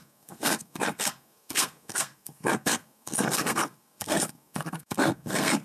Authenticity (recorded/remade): remade